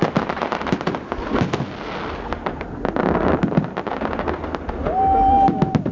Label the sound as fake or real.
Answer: real